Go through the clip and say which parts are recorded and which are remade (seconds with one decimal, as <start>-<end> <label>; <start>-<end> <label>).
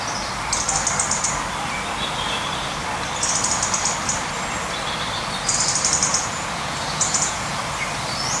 0.0-6.1 recorded; 6.1-7.6 remade; 7.6-8.4 recorded